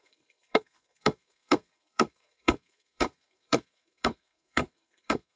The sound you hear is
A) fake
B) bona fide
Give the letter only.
A